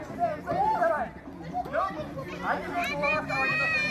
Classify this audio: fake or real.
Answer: real